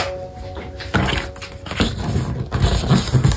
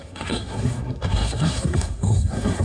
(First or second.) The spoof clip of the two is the second